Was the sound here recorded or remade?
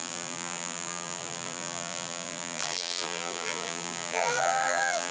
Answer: remade